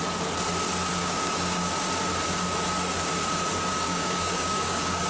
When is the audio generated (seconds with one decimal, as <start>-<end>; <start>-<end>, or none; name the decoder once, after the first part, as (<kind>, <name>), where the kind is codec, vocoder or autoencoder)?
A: 1.0-1.7 (codec, DAC); 3.9-5.1